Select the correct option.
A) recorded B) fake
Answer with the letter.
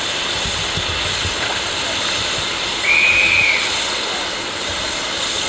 A